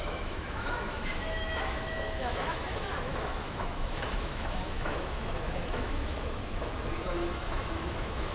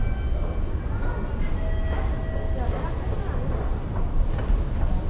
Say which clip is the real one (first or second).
second